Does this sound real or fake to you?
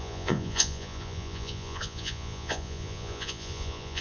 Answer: fake